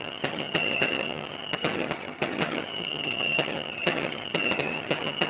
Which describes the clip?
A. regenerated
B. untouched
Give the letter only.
A